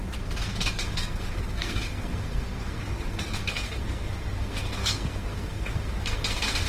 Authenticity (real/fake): fake